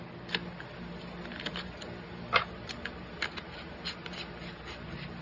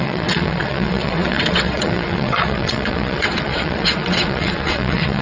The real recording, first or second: first